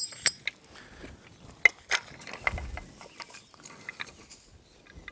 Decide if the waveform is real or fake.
real